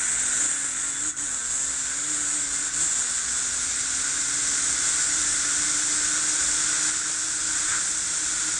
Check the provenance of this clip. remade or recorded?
recorded